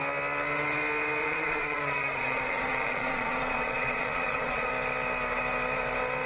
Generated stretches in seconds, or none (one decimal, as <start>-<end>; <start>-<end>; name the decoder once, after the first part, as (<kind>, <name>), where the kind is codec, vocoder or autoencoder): 1.2-4.7 (vocoder, Vocos)

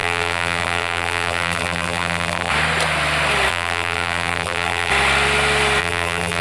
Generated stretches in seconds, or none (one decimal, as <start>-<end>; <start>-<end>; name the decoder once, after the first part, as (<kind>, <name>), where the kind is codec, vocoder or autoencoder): 0.0-2.5 (vocoder, BigVGAN v2); 3.5-4.9; 5.8-6.4

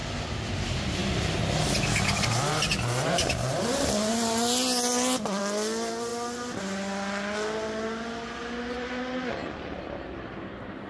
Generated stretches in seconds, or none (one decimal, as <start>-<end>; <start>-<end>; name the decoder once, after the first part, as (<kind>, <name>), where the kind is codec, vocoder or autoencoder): none

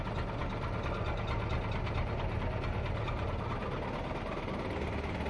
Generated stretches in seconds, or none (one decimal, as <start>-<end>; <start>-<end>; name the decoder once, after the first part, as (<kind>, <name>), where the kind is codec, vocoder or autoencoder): none

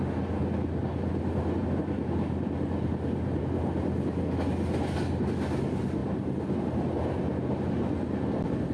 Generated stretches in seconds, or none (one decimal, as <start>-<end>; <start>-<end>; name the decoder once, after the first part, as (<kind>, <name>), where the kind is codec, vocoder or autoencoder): none